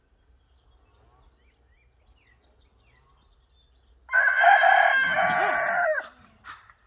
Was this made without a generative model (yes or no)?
yes